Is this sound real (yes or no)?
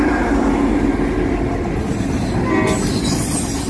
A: yes